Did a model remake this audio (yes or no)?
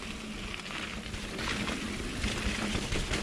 no